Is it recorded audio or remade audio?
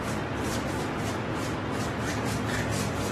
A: remade